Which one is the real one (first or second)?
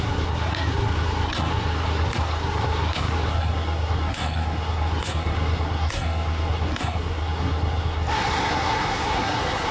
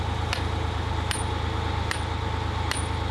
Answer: second